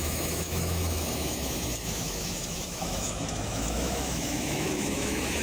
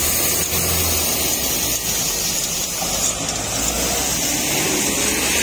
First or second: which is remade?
first